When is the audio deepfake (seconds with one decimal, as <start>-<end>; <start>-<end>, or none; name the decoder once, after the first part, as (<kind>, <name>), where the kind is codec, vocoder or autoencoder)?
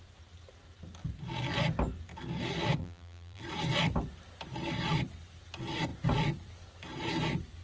2.8-3.4 (vocoder, BigVGAN v2)